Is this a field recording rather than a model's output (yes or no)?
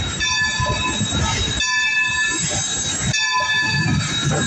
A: yes